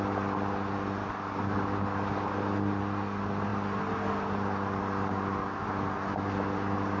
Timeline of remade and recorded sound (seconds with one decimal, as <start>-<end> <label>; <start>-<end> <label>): 0.0-7.0 recorded